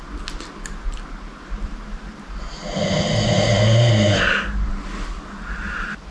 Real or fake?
real